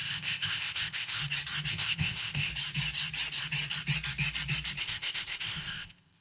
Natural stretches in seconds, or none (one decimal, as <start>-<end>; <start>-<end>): 1.2-1.7; 2.5-4.8